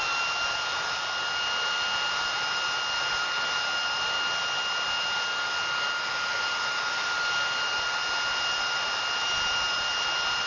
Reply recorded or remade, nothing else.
recorded